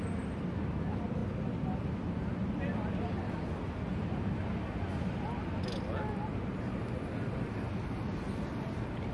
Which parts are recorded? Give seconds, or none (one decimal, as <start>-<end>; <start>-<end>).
0.0-9.1